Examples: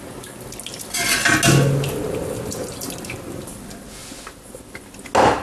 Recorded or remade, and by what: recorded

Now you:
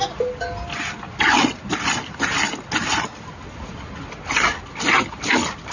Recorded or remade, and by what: recorded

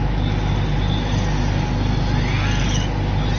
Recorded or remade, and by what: recorded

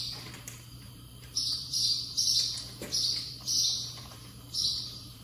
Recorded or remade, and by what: remade, vocoder, BigVGAN v2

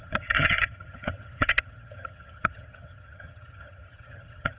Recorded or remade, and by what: remade, vocoder, HiFi-GAN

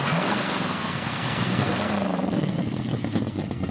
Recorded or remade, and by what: remade, codec, SNAC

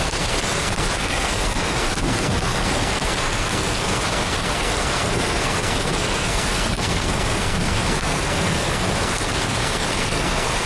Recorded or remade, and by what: remade, codec, SNAC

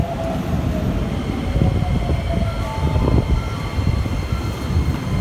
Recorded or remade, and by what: recorded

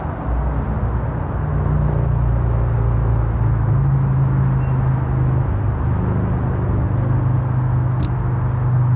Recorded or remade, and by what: recorded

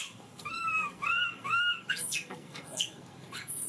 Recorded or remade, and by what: remade, codec, SNAC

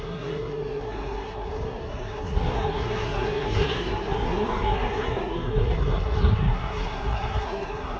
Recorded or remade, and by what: remade, codec, SNAC